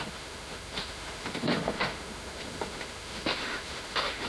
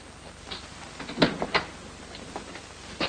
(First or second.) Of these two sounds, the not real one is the first